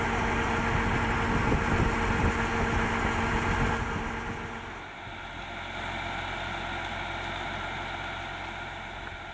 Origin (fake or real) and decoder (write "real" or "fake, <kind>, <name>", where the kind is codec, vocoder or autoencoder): real